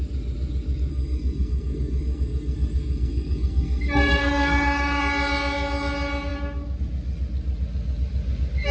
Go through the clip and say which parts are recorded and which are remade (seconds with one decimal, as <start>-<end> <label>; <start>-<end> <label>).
0.0-0.9 recorded; 0.9-5.0 remade; 5.0-8.7 recorded